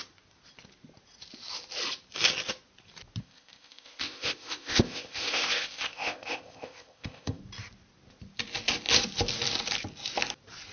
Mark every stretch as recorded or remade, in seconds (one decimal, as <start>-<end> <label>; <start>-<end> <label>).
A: 0.0-3.2 recorded; 3.2-7.4 remade; 7.4-10.7 recorded